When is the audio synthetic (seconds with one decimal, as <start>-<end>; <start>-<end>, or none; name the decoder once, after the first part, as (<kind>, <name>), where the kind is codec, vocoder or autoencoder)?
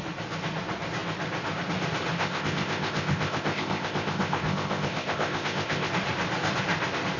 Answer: 2.2-5.9 (codec, ZipCodec)